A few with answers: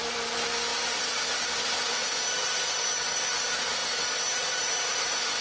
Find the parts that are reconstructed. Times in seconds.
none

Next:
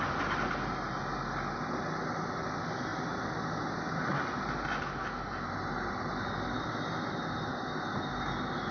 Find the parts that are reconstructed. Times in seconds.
none

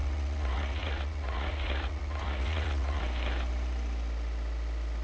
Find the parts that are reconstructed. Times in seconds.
0.0-3.0 (vocoder, Vocos)

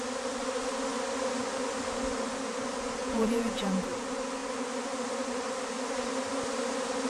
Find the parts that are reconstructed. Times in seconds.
3.0-3.8 (vocoder, Vocos)

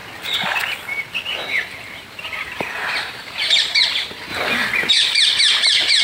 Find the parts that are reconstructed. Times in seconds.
1.5-4.3 (vocoder, BigVGAN v2); 4.9-6.0